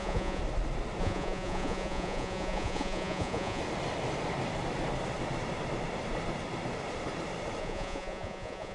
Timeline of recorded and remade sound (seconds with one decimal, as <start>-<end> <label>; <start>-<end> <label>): 0.0-0.4 remade; 0.4-1.0 recorded; 1.0-3.6 remade; 3.6-7.6 recorded; 7.6-8.7 remade